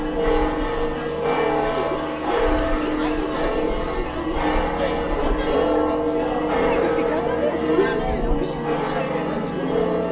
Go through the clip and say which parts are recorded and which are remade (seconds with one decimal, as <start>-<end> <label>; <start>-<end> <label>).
0.0-10.1 recorded